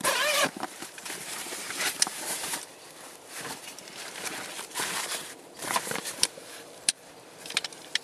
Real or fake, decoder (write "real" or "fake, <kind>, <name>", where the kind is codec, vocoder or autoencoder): fake, vocoder, BigVGAN v2